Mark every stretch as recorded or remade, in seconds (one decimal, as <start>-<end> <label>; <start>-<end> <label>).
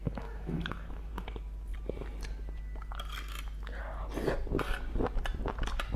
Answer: 0.0-1.1 remade; 1.1-6.0 recorded